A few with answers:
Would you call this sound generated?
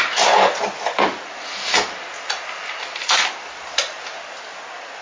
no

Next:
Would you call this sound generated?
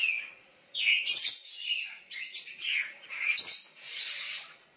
yes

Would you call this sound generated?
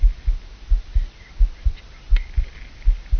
no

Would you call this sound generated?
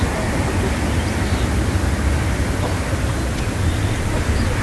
no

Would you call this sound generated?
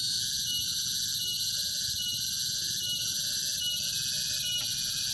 no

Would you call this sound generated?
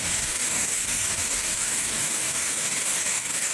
yes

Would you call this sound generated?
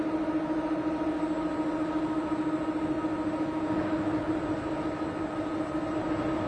no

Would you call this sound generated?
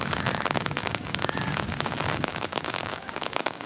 yes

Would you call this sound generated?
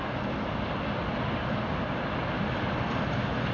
no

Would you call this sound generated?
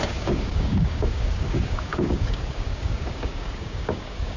yes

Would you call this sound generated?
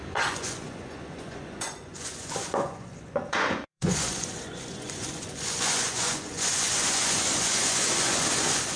yes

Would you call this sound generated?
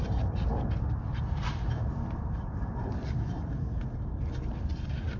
no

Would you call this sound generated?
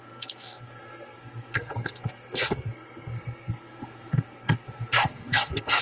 yes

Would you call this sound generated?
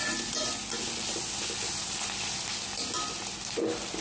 no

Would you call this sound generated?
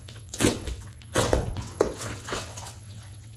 yes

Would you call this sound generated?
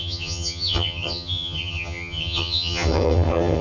yes